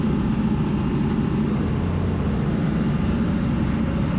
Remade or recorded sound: recorded